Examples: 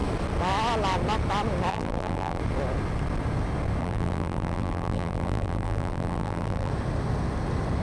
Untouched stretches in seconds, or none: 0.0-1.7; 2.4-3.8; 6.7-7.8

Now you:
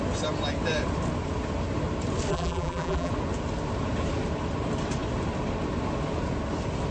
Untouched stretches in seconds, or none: 0.0-2.3; 3.1-6.9

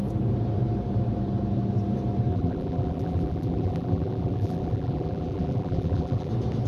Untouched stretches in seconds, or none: 0.0-2.3; 6.3-6.7

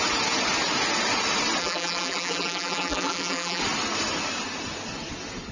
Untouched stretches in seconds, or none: 0.0-1.6; 3.6-5.5

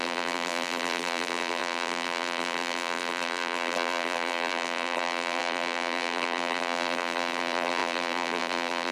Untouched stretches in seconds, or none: none

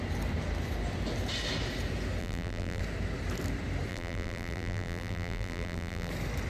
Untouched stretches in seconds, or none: 0.0-2.2; 2.8-3.9; 6.1-6.5

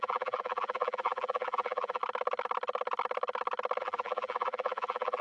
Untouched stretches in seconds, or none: 2.0-3.8